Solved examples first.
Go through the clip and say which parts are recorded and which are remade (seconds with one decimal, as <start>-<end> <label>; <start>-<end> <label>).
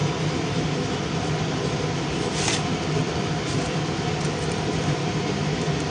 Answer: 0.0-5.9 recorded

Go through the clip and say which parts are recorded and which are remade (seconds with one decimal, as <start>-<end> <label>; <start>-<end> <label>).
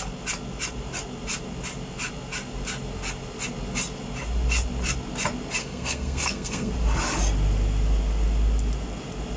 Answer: 0.0-5.6 recorded; 5.6-6.7 remade; 6.7-9.4 recorded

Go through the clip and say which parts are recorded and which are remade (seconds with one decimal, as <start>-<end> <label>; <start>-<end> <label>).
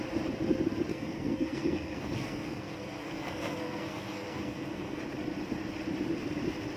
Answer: 0.0-0.9 recorded; 0.9-5.0 remade; 5.0-6.8 recorded